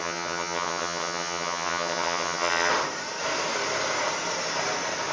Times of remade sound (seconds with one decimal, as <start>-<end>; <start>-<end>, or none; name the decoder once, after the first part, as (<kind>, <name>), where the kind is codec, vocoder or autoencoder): 0.0-2.7 (vocoder, HiFi-GAN)